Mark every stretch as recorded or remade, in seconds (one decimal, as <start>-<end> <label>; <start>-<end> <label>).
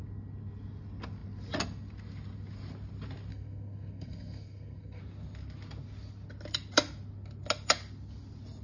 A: 0.0-3.3 recorded; 3.3-5.0 remade; 5.0-8.6 recorded